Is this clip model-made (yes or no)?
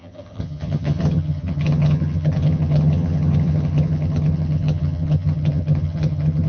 yes